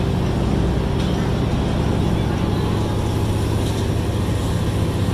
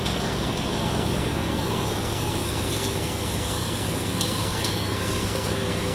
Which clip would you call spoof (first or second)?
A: second